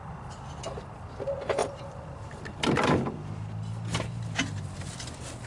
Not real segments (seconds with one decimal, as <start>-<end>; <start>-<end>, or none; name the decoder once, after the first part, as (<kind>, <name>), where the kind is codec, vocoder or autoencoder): 0.0-0.6 (vocoder, BigVGAN v2)